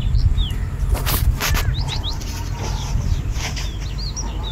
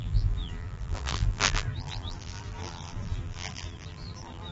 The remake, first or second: second